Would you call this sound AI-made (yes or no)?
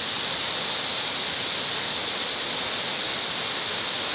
no